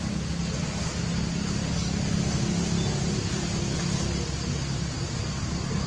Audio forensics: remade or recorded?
recorded